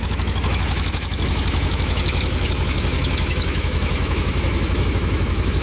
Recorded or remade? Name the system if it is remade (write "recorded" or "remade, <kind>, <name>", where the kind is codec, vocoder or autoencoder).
remade, autoencoder, DAC-VAE